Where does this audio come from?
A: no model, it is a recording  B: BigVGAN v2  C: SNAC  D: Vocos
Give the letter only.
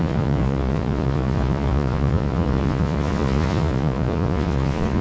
D